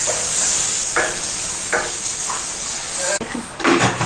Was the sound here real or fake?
fake